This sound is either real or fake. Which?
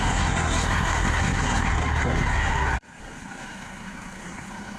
fake